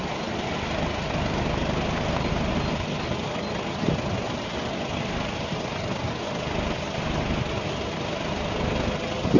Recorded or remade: recorded